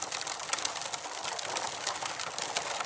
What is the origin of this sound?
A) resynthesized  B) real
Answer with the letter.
B